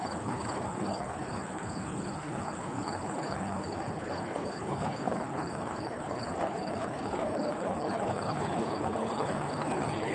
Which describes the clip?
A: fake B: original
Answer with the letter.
A